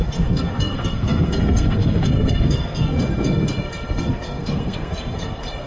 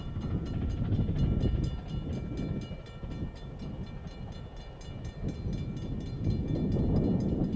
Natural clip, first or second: second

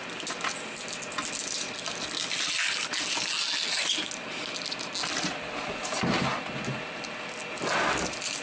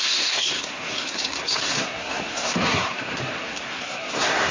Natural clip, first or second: first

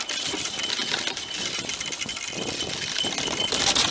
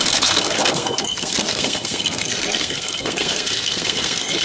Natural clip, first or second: first